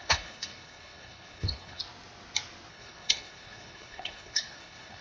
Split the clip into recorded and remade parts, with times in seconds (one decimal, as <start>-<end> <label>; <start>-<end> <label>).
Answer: 0.0-1.8 remade; 1.8-2.7 recorded; 2.7-5.0 remade

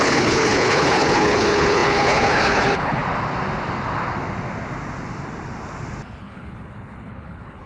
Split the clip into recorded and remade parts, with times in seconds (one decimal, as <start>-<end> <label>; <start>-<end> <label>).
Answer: 0.0-3.0 remade; 3.0-6.2 recorded; 6.2-7.7 remade

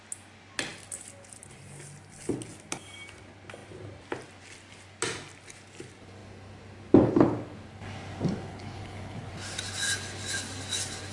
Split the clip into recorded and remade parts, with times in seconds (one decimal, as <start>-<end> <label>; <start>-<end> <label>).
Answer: 0.0-8.5 recorded; 8.5-9.3 remade; 9.3-11.1 recorded

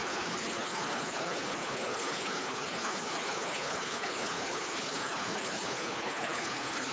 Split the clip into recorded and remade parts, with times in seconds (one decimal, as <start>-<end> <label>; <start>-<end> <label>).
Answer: 0.0-6.9 remade